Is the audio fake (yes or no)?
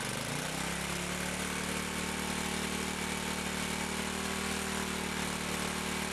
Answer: no